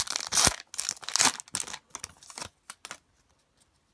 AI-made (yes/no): no